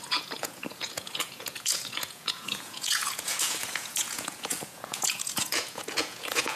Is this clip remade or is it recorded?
remade